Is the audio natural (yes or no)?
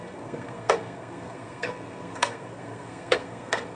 no